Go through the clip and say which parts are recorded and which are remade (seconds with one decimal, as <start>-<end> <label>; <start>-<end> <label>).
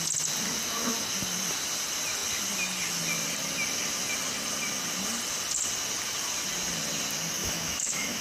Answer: 0.0-7.4 recorded; 7.4-8.2 remade